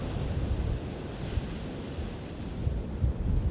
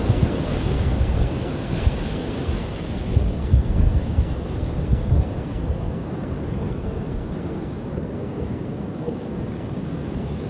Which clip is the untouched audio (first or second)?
first